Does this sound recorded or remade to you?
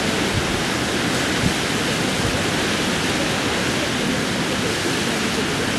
recorded